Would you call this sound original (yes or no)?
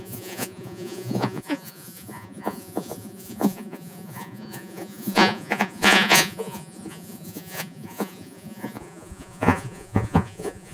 no